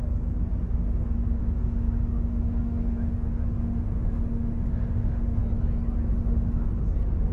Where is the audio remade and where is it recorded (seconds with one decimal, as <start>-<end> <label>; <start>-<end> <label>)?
0.0-1.4 recorded; 1.4-5.4 remade; 5.4-6.1 recorded; 6.1-6.7 remade; 6.7-7.3 recorded

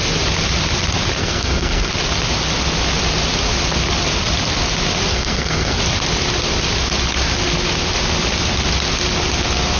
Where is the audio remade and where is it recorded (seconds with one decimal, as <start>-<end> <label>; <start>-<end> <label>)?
0.0-1.2 recorded; 1.2-1.9 remade; 1.9-5.1 recorded; 5.1-5.8 remade; 5.8-9.8 recorded

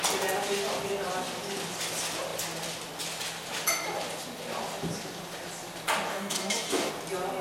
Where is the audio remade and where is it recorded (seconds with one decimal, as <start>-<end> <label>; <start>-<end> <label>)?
0.0-6.1 recorded; 6.1-6.9 remade; 6.9-7.4 recorded

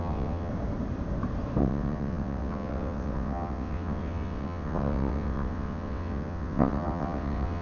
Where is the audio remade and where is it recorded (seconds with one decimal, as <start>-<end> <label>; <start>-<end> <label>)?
0.0-0.5 remade; 0.5-1.6 recorded; 1.6-7.6 remade

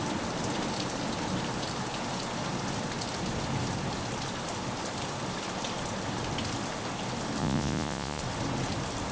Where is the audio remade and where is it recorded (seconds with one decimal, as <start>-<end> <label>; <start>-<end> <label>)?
0.0-7.4 recorded; 7.4-8.2 remade; 8.2-9.1 recorded

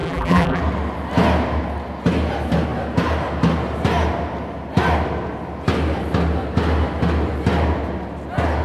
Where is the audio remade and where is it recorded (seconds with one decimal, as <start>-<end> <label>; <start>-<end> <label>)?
0.0-0.6 remade; 0.6-8.6 recorded

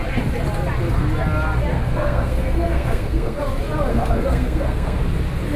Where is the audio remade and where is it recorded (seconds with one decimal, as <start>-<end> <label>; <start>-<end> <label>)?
0.0-1.7 recorded; 1.7-3.4 remade; 3.4-3.9 recorded; 3.9-5.0 remade; 5.0-5.6 recorded